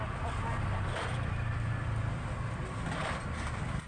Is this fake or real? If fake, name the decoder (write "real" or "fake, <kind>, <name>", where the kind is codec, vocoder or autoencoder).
real